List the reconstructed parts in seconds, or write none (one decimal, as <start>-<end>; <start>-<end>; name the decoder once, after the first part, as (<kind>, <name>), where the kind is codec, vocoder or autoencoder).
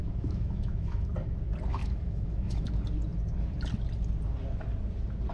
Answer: 0.0-1.1 (autoencoder, DAC-VAE); 1.8-2.7